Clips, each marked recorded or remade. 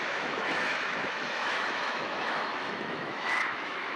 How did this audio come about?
remade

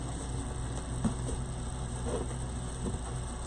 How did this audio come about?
recorded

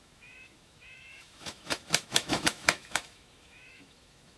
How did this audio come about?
remade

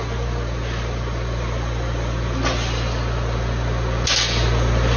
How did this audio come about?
recorded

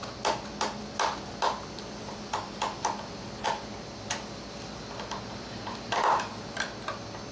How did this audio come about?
recorded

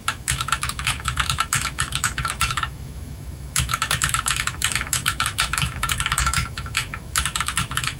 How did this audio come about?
remade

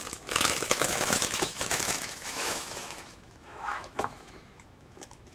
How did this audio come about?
remade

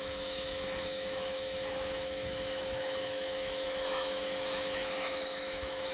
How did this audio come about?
remade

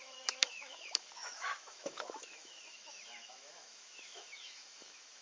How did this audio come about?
remade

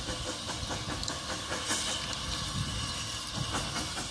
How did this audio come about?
recorded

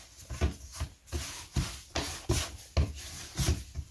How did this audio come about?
recorded